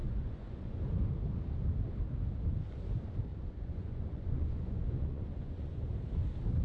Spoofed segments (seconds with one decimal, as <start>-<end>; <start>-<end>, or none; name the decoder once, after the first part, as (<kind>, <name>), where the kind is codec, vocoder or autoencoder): 0.0-0.8 (vocoder, Vocos); 3.3-5.8